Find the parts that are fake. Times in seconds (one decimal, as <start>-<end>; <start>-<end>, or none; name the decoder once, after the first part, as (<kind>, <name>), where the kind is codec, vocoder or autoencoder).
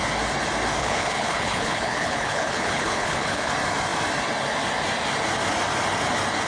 0.8-3.5 (codec, HILCodec)